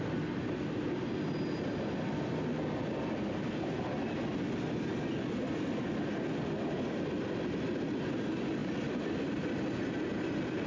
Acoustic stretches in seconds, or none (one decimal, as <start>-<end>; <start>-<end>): 0.0-10.7